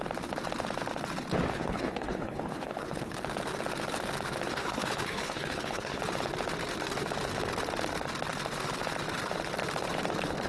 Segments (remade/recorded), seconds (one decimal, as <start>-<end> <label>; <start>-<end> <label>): 0.0-1.5 recorded; 1.5-3.2 remade; 3.2-4.5 recorded; 4.5-6.0 remade; 6.0-10.5 recorded